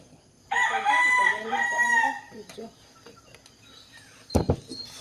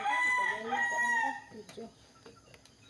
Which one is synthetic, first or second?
first